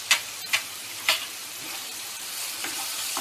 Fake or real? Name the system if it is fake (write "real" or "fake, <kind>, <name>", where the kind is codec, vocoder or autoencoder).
fake, vocoder, BigVGAN v2